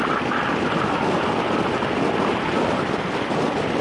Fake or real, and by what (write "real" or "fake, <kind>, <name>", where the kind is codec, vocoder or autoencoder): real